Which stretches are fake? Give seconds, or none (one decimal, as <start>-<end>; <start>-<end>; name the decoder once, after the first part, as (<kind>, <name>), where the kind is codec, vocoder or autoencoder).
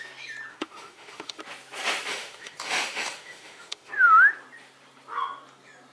0.5-1.4 (autoencoder, DAC-VAE); 2.1-3.9